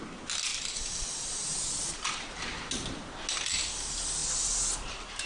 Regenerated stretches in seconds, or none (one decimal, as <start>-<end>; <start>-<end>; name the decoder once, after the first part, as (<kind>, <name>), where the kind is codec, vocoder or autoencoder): 0.5-2.7 (vocoder, BigVGAN v2)